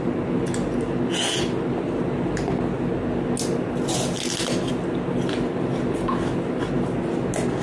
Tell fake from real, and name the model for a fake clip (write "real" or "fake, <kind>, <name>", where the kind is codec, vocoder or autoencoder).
real